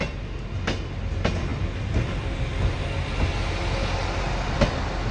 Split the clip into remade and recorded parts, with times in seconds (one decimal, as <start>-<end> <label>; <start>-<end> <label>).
0.0-5.1 recorded